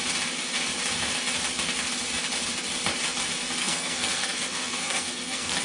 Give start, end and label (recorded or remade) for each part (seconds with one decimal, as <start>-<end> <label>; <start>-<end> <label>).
0.0-3.6 recorded; 3.6-5.6 remade